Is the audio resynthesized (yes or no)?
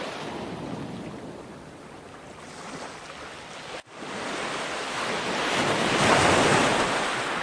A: no